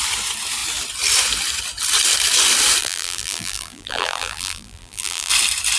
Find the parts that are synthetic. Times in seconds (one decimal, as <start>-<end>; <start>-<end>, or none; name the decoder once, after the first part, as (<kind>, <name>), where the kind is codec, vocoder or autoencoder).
2.8-5.3 (vocoder, BigVGAN v2)